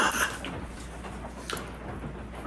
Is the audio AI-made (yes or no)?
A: no